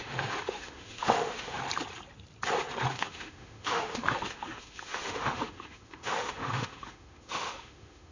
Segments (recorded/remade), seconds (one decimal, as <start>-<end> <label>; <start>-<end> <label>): 0.0-1.6 remade; 1.6-2.9 recorded; 2.9-8.1 remade